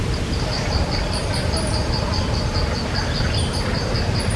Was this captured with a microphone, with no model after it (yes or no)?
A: yes